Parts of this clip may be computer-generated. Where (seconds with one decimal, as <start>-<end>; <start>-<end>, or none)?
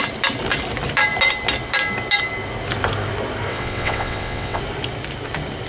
3.5-4.6